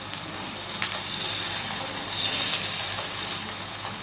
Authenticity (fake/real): real